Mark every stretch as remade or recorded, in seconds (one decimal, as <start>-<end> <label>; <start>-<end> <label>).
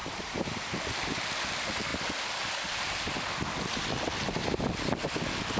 0.0-1.3 remade; 1.3-5.6 recorded